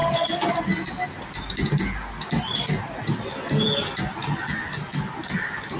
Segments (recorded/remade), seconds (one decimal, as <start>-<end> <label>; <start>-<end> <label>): 0.0-5.8 recorded